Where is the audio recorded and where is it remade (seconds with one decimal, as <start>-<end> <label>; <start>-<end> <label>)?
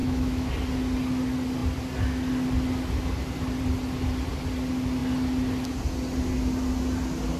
0.0-0.5 remade; 0.5-7.4 recorded